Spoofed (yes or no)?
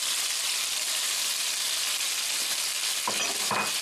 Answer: no